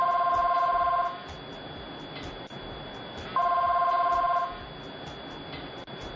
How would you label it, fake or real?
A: real